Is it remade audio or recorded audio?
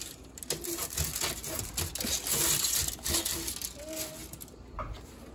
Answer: recorded